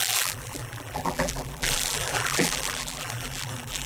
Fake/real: fake